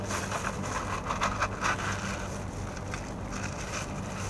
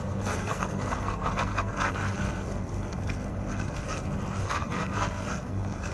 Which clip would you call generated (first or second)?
second